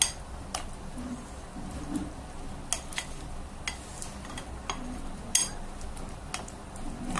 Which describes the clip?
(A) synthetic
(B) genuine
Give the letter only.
B